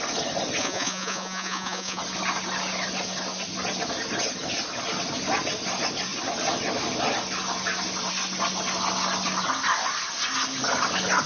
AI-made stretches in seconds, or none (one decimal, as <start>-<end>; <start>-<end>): 0.6-2.0